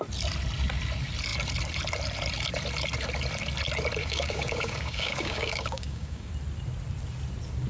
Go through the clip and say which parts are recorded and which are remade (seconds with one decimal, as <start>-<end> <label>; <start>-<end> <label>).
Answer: 0.0-4.0 recorded; 4.0-6.3 remade; 6.3-7.7 recorded